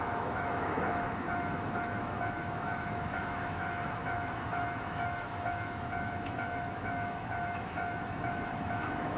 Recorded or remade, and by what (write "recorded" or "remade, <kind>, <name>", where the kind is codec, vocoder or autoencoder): remade, autoencoder, DAC-VAE